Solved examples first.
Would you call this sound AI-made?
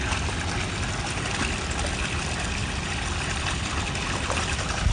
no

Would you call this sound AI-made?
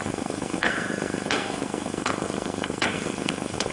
yes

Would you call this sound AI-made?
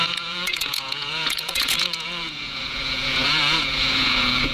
yes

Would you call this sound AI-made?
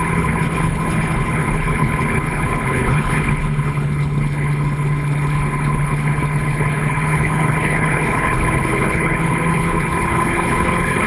yes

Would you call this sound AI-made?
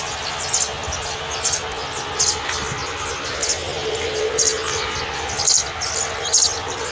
no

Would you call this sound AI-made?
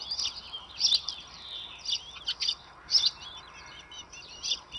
no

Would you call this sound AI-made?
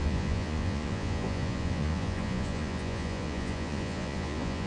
yes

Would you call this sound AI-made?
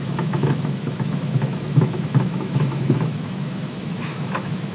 yes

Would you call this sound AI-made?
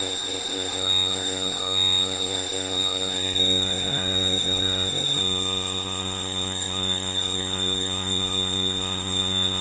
yes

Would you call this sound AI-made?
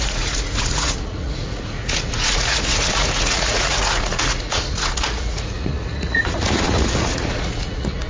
yes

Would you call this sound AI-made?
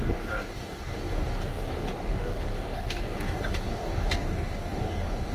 yes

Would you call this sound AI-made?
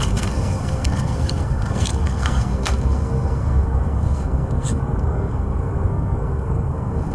yes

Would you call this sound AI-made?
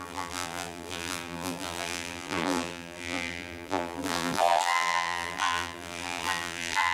yes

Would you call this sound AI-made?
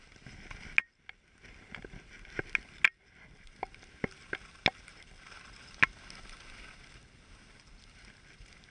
no